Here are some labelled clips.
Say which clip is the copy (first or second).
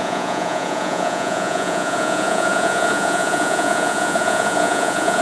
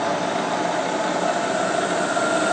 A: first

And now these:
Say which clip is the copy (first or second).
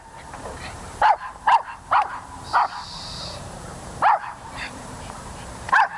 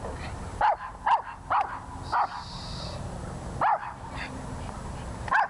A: first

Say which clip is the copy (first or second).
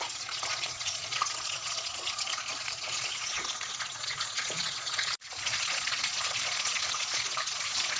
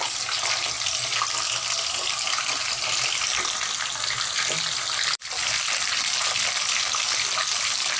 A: first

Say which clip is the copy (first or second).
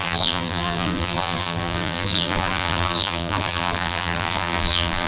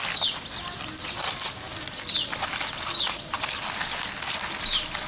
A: first